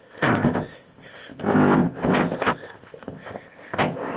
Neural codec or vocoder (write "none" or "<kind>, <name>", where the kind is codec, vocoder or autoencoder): codec, ZipCodec